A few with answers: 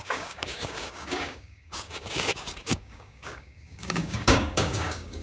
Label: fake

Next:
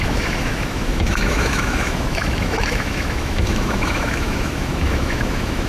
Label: fake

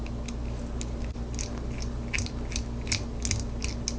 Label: real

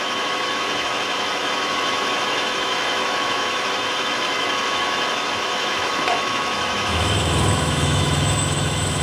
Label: fake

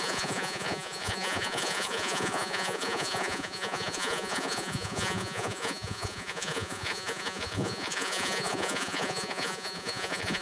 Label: fake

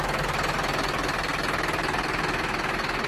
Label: real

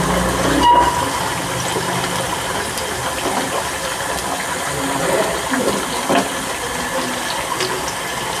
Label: real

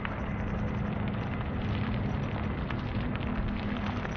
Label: real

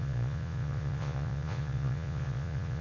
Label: fake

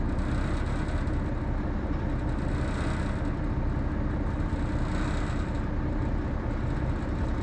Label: real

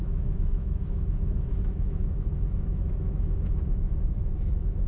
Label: fake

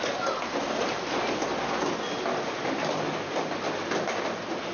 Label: real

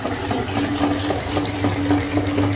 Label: real